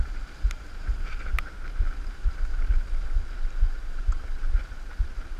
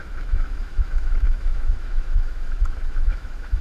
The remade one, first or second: second